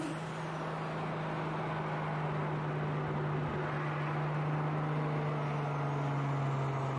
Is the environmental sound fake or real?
real